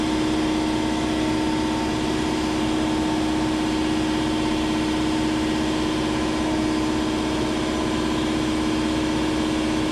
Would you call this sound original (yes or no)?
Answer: yes